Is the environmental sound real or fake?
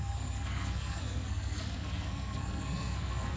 fake